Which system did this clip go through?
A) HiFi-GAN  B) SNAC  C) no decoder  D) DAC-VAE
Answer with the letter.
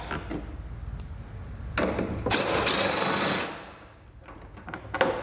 C